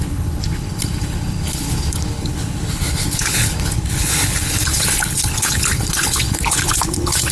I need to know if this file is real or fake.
fake